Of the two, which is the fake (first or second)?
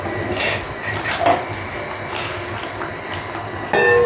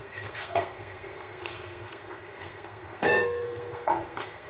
second